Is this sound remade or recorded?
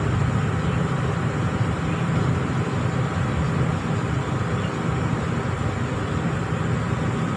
remade